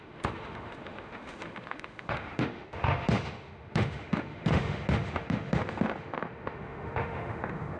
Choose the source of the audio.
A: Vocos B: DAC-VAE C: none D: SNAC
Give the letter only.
B